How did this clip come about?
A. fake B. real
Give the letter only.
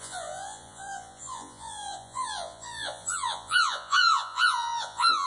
A